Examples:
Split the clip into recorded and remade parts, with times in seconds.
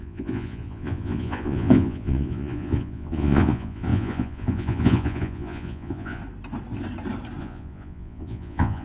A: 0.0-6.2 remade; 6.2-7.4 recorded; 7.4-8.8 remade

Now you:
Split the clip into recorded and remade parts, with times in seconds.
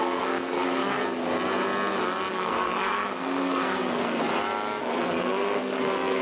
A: 0.0-1.0 remade; 1.0-2.3 recorded; 2.3-4.3 remade; 4.3-4.8 recorded; 4.8-6.2 remade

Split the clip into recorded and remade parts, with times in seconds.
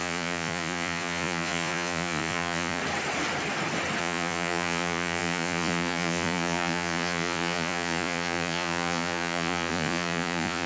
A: 0.0-2.8 remade; 2.8-4.0 recorded; 4.0-10.7 remade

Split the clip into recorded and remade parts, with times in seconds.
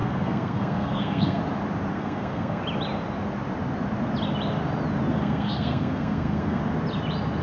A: 0.0-1.4 remade; 1.4-1.9 recorded; 1.9-2.6 remade; 2.6-5.1 recorded; 5.1-6.6 remade; 6.6-7.4 recorded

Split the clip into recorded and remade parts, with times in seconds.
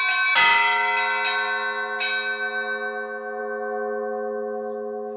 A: 0.0-5.2 recorded